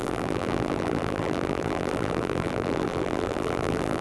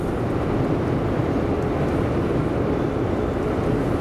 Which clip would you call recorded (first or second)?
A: second